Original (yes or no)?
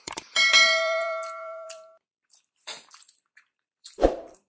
no